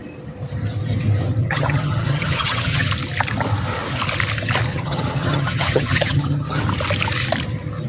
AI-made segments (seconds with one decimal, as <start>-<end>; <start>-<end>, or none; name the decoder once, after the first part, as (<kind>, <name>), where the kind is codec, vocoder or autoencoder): 1.4-2.9 (vocoder, HiFi-GAN); 4.7-6.6